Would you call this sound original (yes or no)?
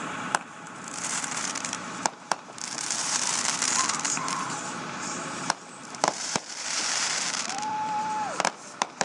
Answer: no